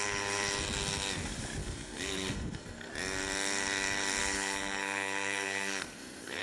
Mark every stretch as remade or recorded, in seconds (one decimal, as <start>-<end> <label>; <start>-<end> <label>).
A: 0.0-1.6 recorded; 1.6-2.9 remade; 2.9-4.2 recorded; 4.2-6.4 remade